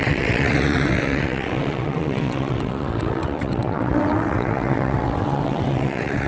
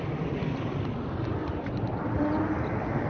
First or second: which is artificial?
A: first